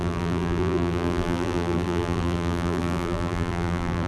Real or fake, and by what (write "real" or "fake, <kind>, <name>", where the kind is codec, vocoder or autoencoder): fake, vocoder, BigVGAN v2